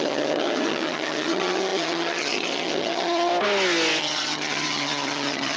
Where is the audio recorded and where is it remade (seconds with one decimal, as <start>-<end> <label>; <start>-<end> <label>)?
0.0-3.3 remade; 3.3-4.0 recorded; 4.0-5.6 remade